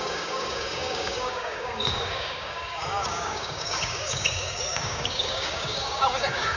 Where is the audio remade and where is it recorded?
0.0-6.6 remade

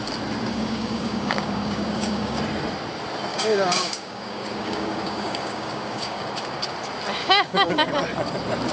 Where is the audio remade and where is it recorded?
0.0-0.5 recorded; 0.5-2.4 remade; 2.4-3.3 recorded; 3.3-6.3 remade; 6.3-7.2 recorded; 7.2-7.9 remade; 7.9-8.7 recorded